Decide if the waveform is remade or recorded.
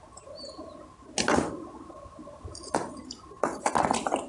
recorded